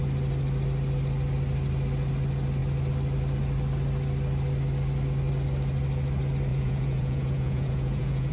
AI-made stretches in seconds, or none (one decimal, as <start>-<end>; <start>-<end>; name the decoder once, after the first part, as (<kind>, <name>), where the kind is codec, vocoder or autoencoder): 6.5-8.3 (vocoder, Vocos)

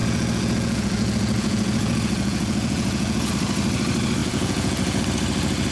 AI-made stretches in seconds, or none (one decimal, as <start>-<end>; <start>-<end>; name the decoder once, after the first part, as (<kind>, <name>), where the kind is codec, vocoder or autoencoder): 0.0-3.3 (vocoder, Vocos); 4.2-5.0